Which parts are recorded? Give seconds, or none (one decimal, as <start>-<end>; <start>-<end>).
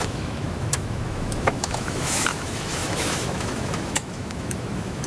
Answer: none